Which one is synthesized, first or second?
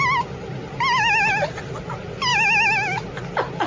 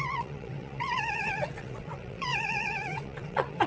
second